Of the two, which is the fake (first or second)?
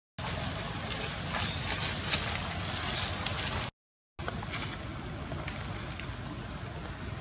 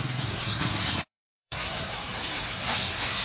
second